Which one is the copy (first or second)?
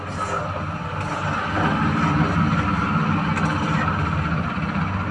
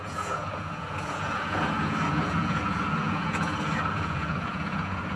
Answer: second